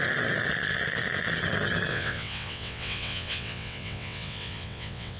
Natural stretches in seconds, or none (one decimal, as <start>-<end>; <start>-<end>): 0.0-1.9